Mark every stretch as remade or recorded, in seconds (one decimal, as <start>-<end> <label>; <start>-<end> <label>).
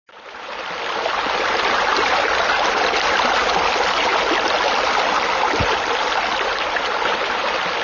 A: 0.0-7.8 recorded